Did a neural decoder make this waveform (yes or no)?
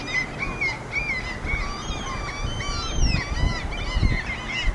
no